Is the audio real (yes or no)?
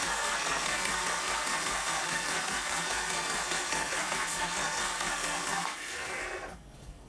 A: no